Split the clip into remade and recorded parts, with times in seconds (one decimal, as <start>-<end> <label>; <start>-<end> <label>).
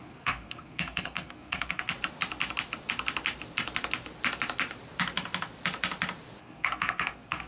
0.0-1.9 remade; 1.9-6.4 recorded; 6.4-7.5 remade